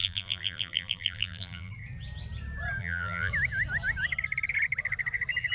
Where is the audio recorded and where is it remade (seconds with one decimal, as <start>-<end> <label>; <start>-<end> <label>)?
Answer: 0.0-1.7 remade; 1.7-2.8 recorded; 2.8-3.3 remade; 3.3-5.5 recorded